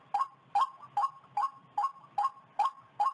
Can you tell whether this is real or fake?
real